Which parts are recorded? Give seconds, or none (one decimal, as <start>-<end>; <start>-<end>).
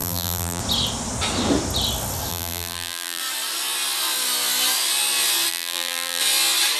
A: 0.6-2.3; 3.2-5.5; 6.2-6.8